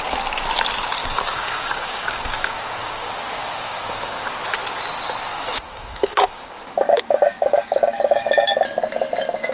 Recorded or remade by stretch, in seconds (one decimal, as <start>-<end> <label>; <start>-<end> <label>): 0.0-1.0 recorded; 1.0-4.3 remade; 4.3-5.3 recorded; 5.3-8.6 remade; 8.6-9.5 recorded